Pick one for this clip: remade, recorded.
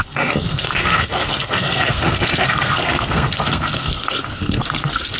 remade